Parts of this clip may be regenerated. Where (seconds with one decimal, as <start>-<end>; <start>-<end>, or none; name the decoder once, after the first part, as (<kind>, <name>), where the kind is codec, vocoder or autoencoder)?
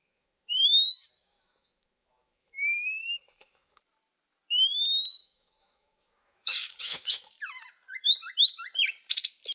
0.0-3.8 (autoencoder, DAC-VAE); 5.2-7.3